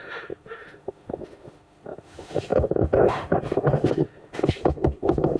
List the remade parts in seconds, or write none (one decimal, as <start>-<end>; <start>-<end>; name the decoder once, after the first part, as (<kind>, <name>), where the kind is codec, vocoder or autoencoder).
0.0-5.4 (autoencoder, DAC-VAE)